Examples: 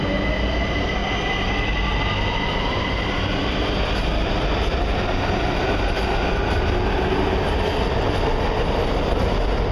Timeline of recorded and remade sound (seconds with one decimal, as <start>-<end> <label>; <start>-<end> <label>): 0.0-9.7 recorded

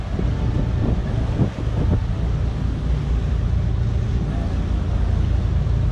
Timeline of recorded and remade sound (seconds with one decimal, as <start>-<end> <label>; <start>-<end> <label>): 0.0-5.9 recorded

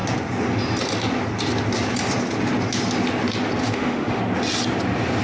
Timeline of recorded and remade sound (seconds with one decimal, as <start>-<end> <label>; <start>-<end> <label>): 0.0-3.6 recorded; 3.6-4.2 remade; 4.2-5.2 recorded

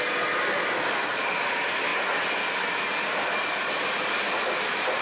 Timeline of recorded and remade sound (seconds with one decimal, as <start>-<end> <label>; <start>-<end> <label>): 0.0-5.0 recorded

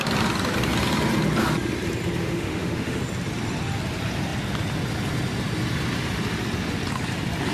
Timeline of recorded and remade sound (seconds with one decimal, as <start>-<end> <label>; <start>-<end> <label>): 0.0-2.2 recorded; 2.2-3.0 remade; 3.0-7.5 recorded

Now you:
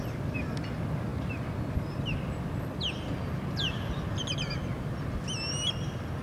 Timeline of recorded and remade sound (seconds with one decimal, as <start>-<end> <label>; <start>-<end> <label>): 0.0-6.2 recorded